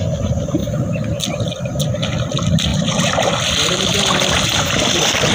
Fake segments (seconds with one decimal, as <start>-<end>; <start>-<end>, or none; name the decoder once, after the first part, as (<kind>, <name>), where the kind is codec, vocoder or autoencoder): 2.7-3.3 (vocoder, BigVGAN v2)